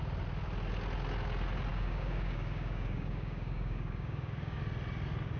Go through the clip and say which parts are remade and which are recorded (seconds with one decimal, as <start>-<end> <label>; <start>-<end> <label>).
0.0-1.7 recorded; 1.7-4.6 remade; 4.6-5.4 recorded